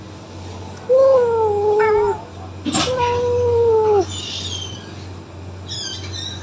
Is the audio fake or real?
real